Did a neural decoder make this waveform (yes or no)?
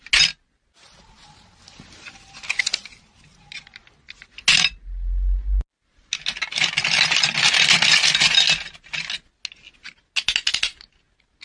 no